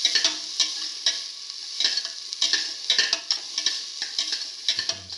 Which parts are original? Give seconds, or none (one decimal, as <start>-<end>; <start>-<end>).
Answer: 0.0-5.2